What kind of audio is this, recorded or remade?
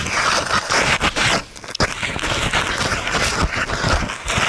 recorded